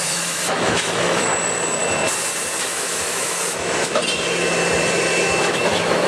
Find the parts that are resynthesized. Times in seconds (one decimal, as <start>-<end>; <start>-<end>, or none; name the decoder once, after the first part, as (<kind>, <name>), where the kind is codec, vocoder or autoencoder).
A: 0.0-1.3 (autoencoder, DAC-VAE); 2.6-4.0; 5.4-6.1